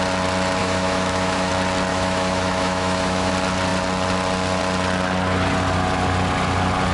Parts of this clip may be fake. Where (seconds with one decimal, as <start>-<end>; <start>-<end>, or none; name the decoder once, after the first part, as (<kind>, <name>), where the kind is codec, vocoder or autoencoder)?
0.6-1.5 (autoencoder, DAC-VAE); 1.9-3.3